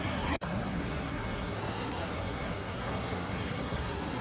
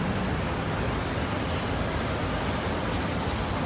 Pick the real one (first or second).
second